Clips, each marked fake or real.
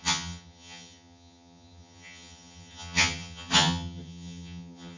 fake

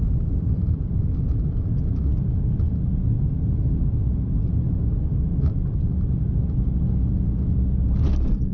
fake